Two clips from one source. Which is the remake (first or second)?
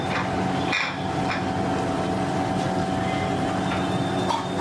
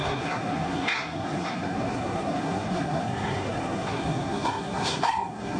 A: second